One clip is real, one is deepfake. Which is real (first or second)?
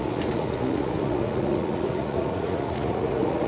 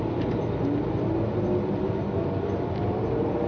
second